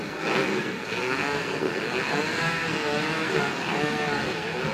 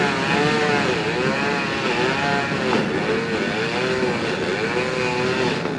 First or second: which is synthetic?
first